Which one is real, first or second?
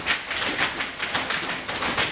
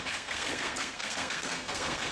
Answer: first